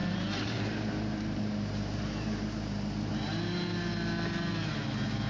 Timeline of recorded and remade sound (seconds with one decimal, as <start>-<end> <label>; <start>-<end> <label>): 0.0-1.4 remade; 1.4-5.3 recorded

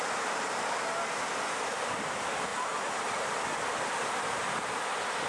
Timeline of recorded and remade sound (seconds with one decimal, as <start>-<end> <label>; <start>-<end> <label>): 0.0-2.5 recorded; 2.5-3.3 remade; 3.3-5.3 recorded

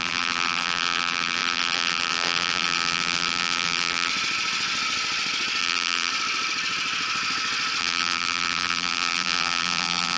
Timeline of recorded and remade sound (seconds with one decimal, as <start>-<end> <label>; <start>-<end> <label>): 0.0-4.1 remade; 4.1-5.6 recorded; 5.6-6.1 remade; 6.1-7.8 recorded; 7.8-10.2 remade

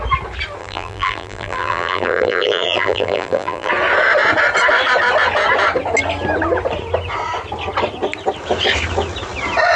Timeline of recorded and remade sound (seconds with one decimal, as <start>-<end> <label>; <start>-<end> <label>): 0.0-0.6 recorded; 0.6-3.7 remade; 3.7-9.8 recorded

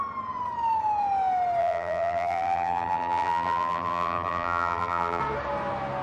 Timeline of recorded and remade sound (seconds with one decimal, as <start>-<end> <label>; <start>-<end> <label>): 0.0-1.6 recorded; 1.6-5.2 remade; 5.2-6.0 recorded

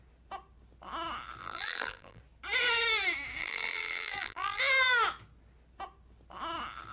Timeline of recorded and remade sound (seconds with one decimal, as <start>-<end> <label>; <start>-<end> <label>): 0.0-1.4 recorded; 1.4-2.2 remade; 2.2-3.4 recorded; 3.4-4.6 remade; 4.6-6.9 recorded

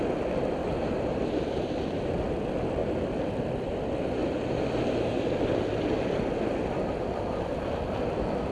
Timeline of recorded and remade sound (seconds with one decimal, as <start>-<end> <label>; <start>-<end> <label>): 0.0-0.6 recorded; 0.6-2.0 remade; 2.0-2.8 recorded; 2.8-3.3 remade; 3.3-4.2 recorded; 4.2-5.0 remade; 5.0-8.5 recorded

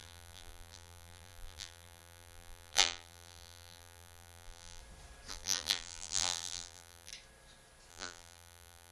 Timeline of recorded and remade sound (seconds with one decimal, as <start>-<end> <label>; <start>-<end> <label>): 0.0-4.8 remade; 4.8-5.3 recorded; 5.3-7.1 remade; 7.1-7.9 recorded; 7.9-8.9 remade